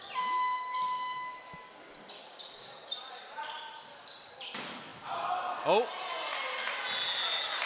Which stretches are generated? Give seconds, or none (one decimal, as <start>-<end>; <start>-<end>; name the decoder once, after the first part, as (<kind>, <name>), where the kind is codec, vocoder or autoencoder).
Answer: 2.2-3.4 (vocoder, BigVGAN v2)